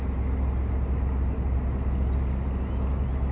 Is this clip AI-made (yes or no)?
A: no